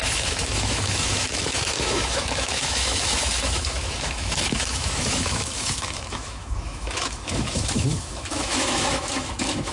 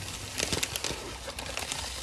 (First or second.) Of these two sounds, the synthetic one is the first